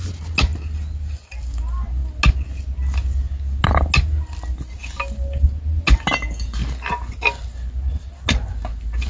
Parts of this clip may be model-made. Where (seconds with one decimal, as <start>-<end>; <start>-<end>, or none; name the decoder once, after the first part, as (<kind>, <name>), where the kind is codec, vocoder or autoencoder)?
none